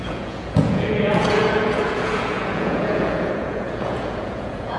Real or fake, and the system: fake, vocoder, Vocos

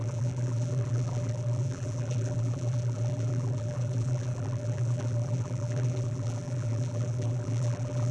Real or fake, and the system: fake, vocoder, BigVGAN v2